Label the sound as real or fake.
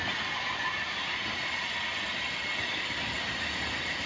real